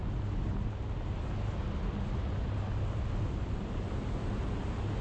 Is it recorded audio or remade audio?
recorded